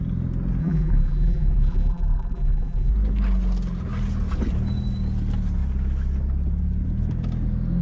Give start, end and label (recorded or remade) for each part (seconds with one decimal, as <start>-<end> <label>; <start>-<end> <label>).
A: 0.0-0.6 recorded; 0.6-2.9 remade; 2.9-7.8 recorded